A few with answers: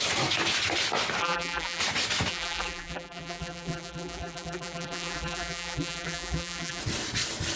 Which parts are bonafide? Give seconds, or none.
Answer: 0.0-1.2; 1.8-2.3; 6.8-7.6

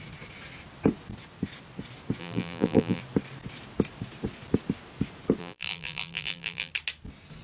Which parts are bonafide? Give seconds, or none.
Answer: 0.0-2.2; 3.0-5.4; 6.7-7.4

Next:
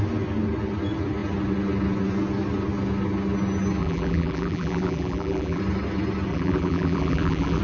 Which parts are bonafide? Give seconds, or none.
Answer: 0.0-3.8; 5.6-6.3

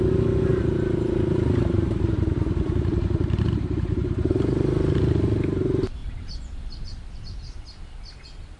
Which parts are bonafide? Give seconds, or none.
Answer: 0.0-0.5; 5.0-6.0; 7.5-8.6